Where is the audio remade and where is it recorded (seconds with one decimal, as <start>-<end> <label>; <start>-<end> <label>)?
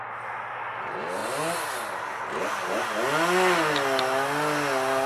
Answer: 0.0-5.1 recorded